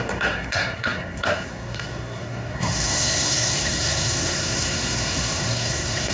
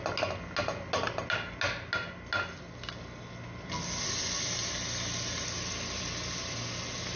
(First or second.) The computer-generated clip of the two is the first